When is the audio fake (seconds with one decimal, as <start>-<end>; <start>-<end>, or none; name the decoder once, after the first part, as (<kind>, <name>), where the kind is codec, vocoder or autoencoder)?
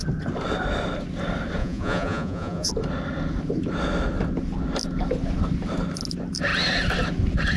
1.6-2.7 (vocoder, Vocos)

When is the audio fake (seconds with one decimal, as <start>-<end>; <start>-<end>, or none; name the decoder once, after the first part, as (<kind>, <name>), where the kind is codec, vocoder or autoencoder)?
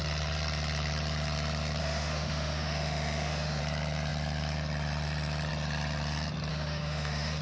1.8-3.6 (autoencoder, DAC-VAE); 6.5-7.4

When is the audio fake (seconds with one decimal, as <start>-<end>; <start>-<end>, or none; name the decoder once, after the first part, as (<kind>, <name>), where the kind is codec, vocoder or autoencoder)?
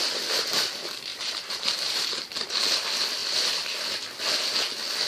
1.1-2.2 (vocoder, BigVGAN v2)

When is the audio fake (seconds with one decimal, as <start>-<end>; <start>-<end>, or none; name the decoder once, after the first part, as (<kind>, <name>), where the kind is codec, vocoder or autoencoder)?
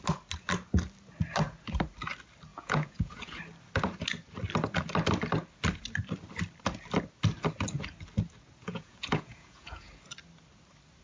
2.5-3.4 (vocoder, Vocos); 8.6-9.9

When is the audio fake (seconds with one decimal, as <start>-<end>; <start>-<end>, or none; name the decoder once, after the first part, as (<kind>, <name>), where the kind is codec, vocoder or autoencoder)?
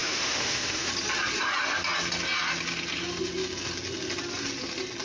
0.0-0.9 (autoencoder, DAC-VAE)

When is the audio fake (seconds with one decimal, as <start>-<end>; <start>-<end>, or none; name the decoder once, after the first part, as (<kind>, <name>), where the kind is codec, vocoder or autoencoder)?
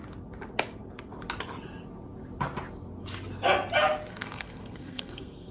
4.1-5.5 (codec, SNAC)